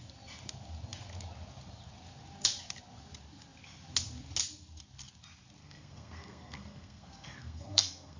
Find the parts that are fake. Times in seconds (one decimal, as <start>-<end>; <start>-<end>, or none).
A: 5.6-8.2